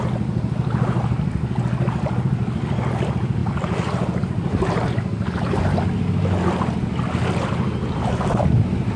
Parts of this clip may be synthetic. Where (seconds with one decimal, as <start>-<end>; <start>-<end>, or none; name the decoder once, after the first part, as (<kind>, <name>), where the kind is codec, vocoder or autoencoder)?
3.4-5.8 (vocoder, BigVGAN v2)